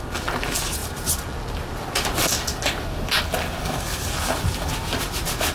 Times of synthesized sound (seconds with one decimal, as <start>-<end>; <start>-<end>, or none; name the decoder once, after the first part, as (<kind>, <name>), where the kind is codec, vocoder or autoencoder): 3.6-4.1 (codec, SNAC)